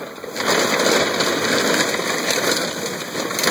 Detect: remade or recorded recorded